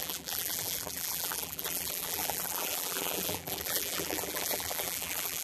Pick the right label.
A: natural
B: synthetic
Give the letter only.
B